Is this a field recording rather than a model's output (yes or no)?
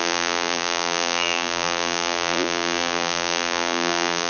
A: no